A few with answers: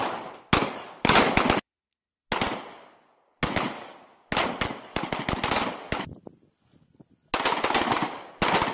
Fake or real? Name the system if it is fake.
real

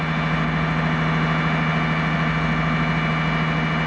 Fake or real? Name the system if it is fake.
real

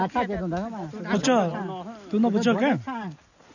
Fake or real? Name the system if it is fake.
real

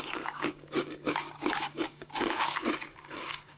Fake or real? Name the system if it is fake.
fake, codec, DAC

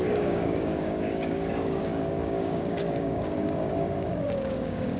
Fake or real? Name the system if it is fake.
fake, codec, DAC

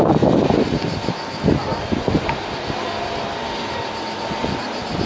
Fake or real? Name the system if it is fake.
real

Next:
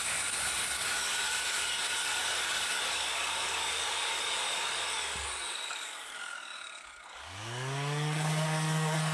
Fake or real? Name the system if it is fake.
fake, codec, DAC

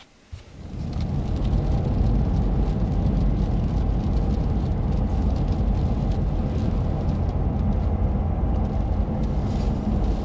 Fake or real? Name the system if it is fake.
real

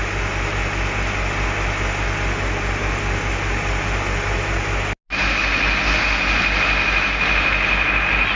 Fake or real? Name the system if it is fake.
real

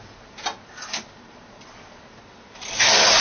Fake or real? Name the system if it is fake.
real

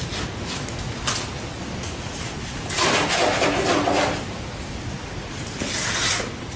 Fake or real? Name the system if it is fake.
real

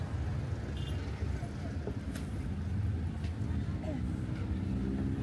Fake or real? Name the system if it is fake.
real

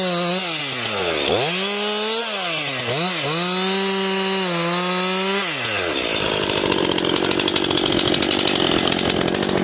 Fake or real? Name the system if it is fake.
real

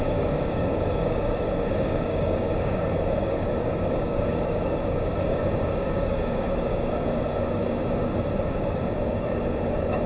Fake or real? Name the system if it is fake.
fake, codec, DAC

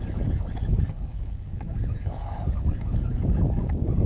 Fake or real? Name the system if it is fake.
fake, codec, DAC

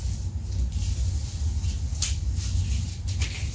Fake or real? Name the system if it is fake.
real